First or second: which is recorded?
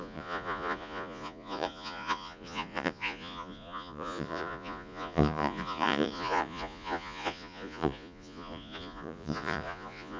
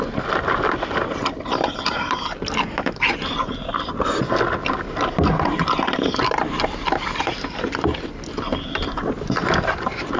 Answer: second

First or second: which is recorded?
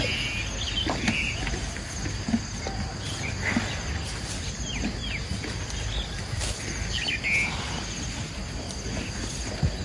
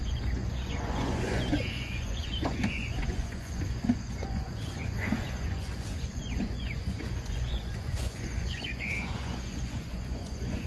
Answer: first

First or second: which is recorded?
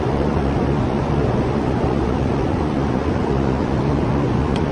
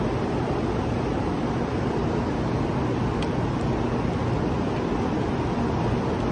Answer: second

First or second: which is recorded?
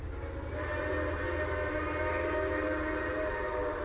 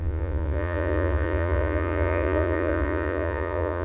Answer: first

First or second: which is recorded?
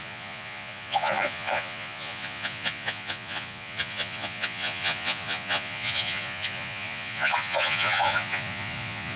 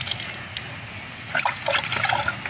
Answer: second